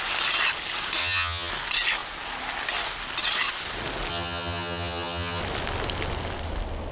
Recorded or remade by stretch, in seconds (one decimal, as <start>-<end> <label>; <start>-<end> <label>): 0.0-1.0 recorded; 1.0-1.5 remade; 1.5-4.1 recorded; 4.1-5.4 remade; 5.4-6.9 recorded